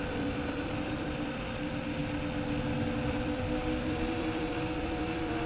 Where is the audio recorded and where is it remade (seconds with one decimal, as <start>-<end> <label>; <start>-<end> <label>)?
0.0-2.0 remade; 2.0-3.1 recorded; 3.1-5.5 remade